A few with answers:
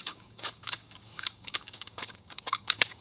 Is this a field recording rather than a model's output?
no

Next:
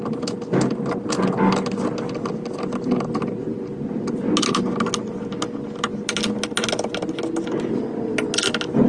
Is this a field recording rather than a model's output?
yes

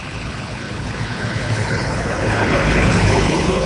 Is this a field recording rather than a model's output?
no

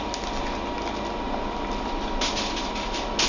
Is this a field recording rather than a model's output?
yes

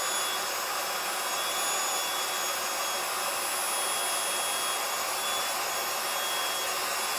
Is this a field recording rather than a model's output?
yes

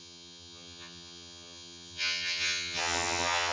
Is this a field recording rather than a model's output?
no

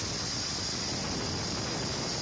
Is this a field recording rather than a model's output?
yes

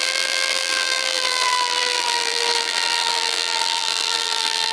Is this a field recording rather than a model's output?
no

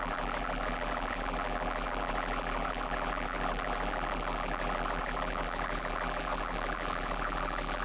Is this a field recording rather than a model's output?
no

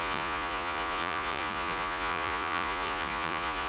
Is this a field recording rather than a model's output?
no